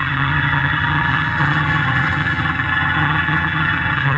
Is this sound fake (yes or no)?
yes